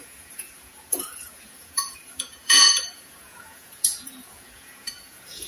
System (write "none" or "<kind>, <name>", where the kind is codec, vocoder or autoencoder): vocoder, Vocos